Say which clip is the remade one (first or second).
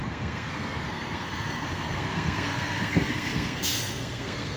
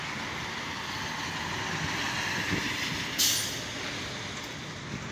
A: first